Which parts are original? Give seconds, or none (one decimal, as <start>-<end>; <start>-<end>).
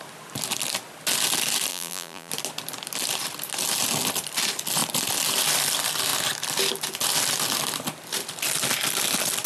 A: 0.0-1.7; 2.3-9.5